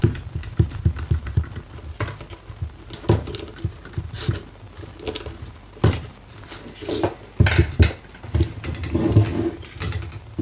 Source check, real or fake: real